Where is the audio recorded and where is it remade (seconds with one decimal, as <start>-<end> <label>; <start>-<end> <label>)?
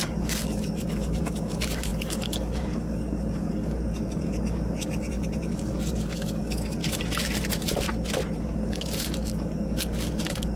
0.0-6.8 remade; 6.8-8.4 recorded; 8.4-10.6 remade